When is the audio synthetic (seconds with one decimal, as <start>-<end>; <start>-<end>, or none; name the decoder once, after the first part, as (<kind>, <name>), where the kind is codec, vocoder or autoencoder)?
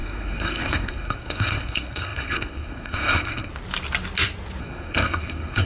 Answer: 0.0-3.5 (codec, SNAC); 4.6-5.7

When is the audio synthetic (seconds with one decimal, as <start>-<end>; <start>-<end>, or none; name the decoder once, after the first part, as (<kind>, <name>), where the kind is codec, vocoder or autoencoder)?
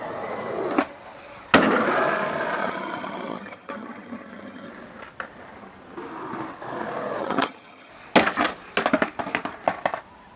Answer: 2.6-4.7 (vocoder, HiFi-GAN); 7.2-7.9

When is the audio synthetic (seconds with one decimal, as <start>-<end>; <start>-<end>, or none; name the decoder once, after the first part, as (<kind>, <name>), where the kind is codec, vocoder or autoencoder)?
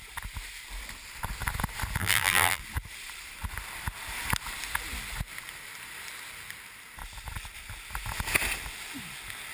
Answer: 2.0-2.6 (vocoder, BigVGAN v2)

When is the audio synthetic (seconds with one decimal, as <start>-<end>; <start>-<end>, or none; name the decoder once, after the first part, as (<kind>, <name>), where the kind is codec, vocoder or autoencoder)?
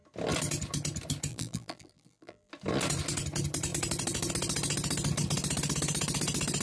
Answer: 1.3-2.5 (vocoder, BigVGAN v2)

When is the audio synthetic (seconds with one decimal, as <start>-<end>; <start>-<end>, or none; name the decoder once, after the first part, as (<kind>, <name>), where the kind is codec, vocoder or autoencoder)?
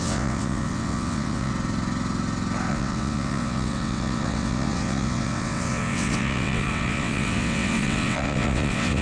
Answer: 0.0-1.5 (vocoder, WaveNeXt); 2.7-9.0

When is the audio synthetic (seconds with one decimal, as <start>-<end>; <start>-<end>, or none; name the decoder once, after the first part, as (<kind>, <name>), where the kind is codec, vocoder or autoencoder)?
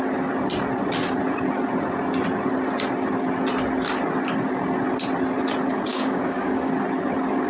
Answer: 5.9-6.7 (codec, DAC)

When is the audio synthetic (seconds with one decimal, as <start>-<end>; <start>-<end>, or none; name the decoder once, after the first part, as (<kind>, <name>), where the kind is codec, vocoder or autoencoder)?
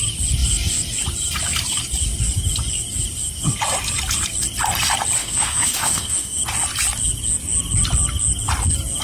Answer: 5.2-6.4 (autoencoder, DAC-VAE)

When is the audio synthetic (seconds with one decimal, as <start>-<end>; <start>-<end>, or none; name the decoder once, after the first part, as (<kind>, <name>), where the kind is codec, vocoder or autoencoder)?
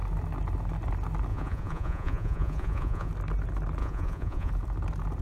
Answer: 1.3-3.1 (vocoder, Vocos); 3.8-4.5